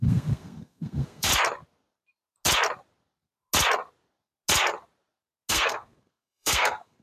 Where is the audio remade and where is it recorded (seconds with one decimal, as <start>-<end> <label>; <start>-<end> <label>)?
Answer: 0.0-1.3 remade; 1.3-5.5 recorded; 5.5-7.0 remade